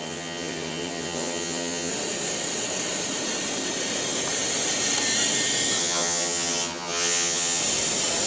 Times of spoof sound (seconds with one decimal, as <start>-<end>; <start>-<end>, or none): 0.0-1.9; 5.8-7.6

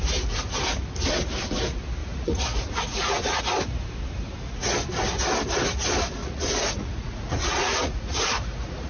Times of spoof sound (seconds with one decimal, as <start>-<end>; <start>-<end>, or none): 2.0-3.4; 6.2-8.9

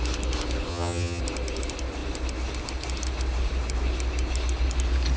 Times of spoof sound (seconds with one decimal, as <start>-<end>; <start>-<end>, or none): 0.7-1.2

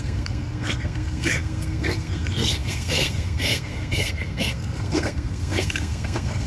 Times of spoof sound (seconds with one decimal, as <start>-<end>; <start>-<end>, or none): 0.0-6.5

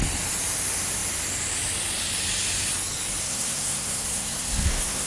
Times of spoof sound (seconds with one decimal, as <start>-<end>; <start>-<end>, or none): 3.2-5.1

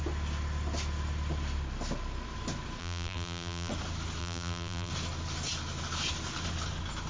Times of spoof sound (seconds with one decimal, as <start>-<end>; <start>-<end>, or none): 2.8-3.7; 4.2-4.9